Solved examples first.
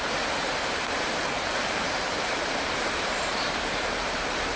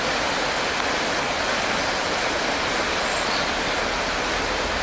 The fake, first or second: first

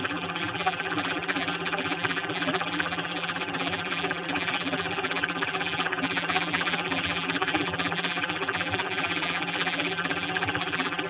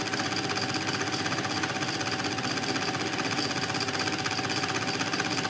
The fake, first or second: first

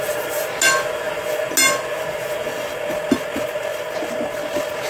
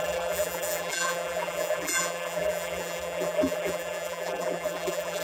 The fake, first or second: second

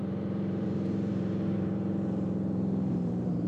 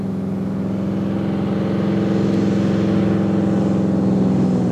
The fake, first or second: first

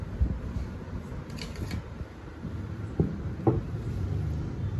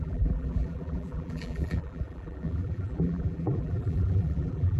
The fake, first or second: second